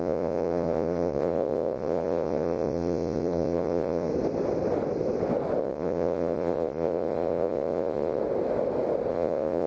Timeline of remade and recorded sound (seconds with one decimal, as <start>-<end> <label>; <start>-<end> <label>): 0.0-4.1 remade; 4.1-5.6 recorded; 5.6-8.2 remade; 8.2-9.1 recorded; 9.1-9.7 remade